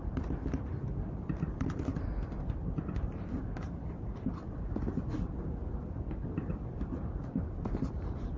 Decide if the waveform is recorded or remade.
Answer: recorded